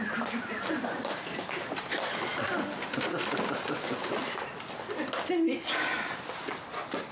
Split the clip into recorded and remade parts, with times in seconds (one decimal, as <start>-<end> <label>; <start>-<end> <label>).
0.0-7.1 recorded